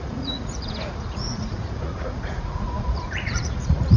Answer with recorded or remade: remade